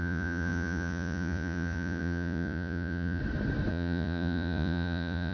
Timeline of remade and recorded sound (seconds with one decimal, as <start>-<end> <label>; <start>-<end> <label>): 0.0-3.2 remade; 3.2-3.7 recorded; 3.7-5.3 remade